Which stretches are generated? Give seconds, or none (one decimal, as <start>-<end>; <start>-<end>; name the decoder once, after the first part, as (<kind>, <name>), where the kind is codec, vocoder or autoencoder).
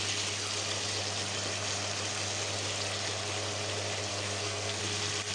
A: 4.1-4.8 (codec, SNAC)